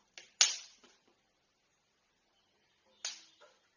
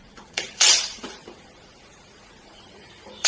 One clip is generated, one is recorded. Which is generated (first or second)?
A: second